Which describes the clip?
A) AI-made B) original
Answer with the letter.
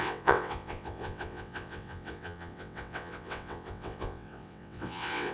A